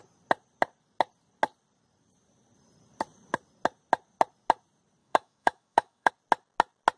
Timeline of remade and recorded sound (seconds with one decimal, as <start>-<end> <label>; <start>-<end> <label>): 0.0-5.0 recorded; 5.0-6.1 remade; 6.1-7.0 recorded